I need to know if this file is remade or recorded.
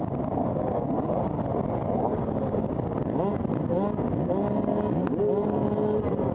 recorded